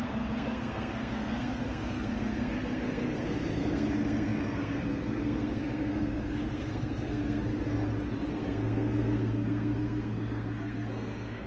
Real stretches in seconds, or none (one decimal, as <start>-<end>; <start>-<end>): 7.5-8.3